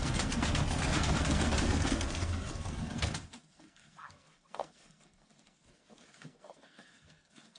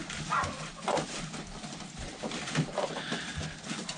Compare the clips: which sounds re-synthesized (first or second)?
first